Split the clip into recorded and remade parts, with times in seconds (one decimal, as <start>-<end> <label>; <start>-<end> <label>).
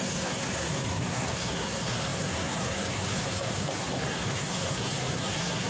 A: 0.0-5.7 remade